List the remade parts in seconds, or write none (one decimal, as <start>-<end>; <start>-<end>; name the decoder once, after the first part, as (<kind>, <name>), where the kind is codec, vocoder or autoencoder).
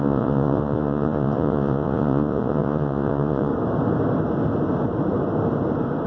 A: 0.0-3.5 (vocoder, Vocos)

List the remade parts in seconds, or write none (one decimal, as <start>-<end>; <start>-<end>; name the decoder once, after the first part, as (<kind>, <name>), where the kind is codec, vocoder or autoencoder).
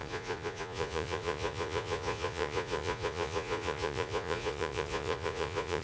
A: 0.0-5.8 (vocoder, Vocos)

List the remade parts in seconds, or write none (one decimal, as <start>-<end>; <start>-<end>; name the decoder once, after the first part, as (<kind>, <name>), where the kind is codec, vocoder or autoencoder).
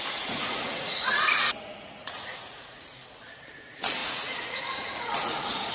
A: 0.0-3.0 (vocoder, Vocos); 3.6-5.7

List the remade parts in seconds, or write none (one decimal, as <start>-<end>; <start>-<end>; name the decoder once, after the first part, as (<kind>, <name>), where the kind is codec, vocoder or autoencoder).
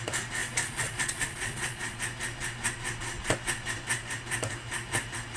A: 0.4-2.0 (vocoder, Vocos)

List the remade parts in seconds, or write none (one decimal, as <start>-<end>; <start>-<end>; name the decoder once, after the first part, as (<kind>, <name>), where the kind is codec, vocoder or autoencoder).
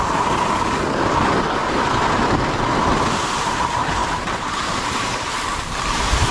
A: none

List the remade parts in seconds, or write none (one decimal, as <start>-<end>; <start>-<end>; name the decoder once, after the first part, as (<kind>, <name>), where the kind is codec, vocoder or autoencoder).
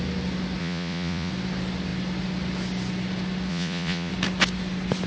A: 0.6-1.3 (vocoder, Vocos); 3.5-4.1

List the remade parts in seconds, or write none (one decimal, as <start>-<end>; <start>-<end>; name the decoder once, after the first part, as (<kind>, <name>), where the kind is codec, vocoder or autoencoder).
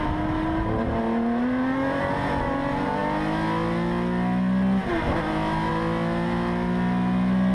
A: none